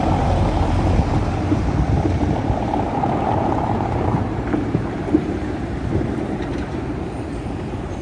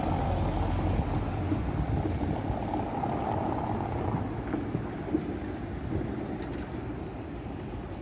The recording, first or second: second